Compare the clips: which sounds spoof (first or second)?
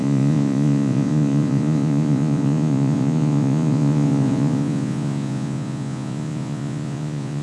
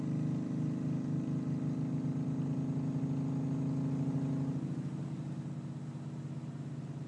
first